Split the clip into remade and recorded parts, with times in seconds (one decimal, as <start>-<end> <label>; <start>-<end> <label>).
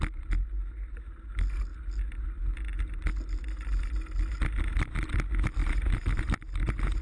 0.0-5.6 recorded; 5.6-7.0 remade